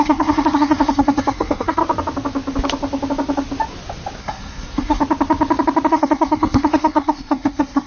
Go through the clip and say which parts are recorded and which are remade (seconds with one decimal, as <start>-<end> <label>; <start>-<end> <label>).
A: 0.0-1.8 remade; 1.8-4.2 recorded; 4.2-5.0 remade; 5.0-5.9 recorded; 5.9-7.9 remade